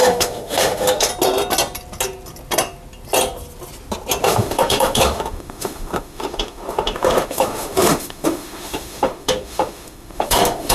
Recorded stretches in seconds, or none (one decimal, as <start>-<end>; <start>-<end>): 1.1-4.2